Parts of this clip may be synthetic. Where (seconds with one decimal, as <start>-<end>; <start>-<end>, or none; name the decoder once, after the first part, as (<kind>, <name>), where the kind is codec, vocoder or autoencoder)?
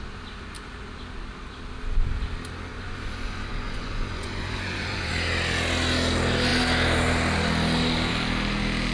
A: 2.7-5.1 (vocoder, Vocos)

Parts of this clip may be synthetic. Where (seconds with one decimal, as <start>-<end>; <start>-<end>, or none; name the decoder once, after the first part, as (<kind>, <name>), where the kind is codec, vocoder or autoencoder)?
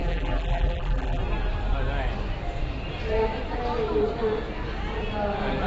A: 0.0-1.2 (vocoder, BigVGAN v2)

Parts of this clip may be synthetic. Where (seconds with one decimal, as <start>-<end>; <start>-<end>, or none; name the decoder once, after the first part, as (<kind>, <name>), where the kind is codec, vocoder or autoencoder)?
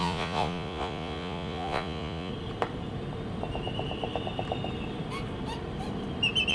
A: 0.0-2.3 (vocoder, Vocos)